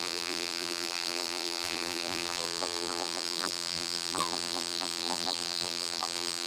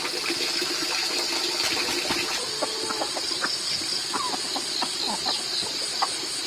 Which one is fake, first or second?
first